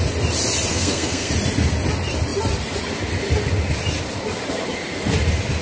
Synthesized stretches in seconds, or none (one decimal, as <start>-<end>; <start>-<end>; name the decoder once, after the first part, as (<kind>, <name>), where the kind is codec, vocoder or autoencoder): 0.7-1.3 (codec, SNAC)